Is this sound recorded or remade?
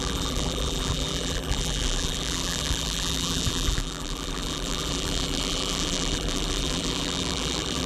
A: remade